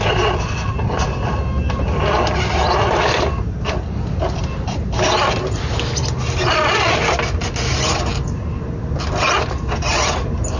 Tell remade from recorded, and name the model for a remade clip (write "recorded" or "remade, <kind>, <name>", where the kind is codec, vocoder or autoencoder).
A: recorded